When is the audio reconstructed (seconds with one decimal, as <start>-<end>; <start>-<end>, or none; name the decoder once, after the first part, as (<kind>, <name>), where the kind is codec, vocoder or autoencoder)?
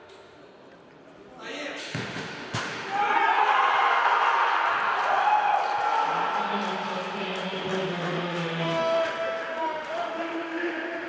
0.0-0.4 (autoencoder, DAC-VAE); 1.8-2.9; 7.9-11.1